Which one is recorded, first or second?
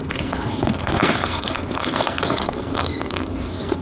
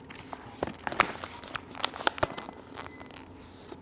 second